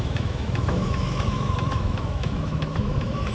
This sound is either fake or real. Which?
fake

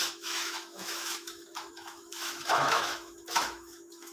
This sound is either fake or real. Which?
fake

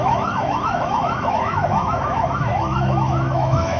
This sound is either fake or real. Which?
fake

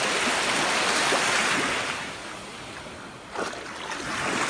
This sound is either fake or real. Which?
real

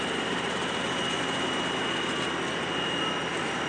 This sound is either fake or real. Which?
real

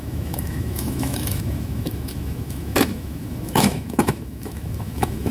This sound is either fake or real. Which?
fake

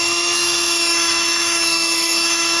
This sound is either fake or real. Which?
fake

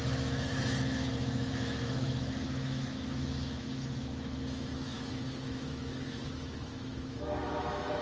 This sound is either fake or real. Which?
fake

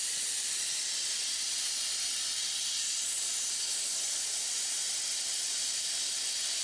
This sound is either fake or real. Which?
real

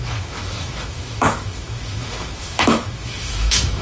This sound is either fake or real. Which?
fake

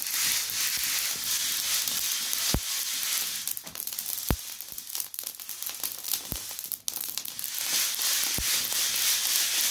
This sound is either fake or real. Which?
real